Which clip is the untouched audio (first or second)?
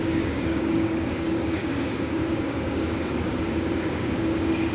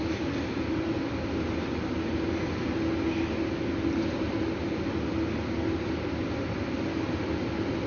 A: second